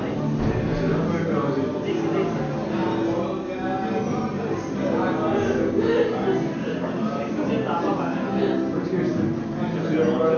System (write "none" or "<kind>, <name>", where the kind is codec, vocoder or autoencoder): none